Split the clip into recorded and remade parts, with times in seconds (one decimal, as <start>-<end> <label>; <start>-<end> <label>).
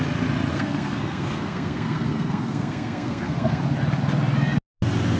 0.0-0.5 recorded; 0.5-3.6 remade; 3.6-5.2 recorded